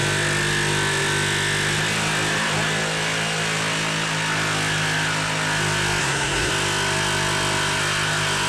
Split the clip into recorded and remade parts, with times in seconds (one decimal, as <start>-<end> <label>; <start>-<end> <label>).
0.0-6.0 recorded; 6.0-6.5 remade; 6.5-8.5 recorded